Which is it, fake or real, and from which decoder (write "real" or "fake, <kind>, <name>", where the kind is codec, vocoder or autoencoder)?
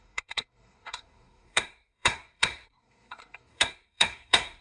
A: fake, codec, SNAC